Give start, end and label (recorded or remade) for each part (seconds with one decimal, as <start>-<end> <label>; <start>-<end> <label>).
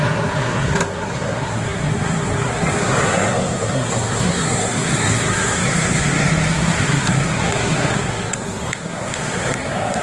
0.0-10.0 remade